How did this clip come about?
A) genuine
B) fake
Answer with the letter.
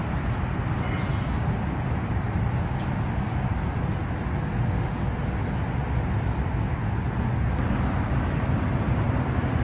A